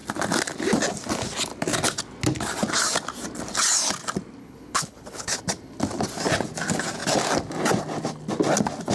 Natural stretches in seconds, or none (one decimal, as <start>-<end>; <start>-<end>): 0.0-4.4; 5.4-8.9